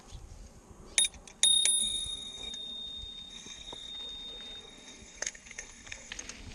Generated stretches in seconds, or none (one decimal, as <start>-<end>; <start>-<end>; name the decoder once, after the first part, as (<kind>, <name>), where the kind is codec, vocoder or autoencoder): 1.8-2.5 (codec, SNAC); 3.3-3.9; 4.6-6.1